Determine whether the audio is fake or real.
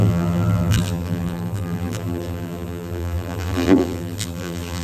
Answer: fake